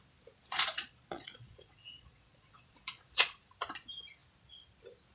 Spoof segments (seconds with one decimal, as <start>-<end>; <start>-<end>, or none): 0.4-3.5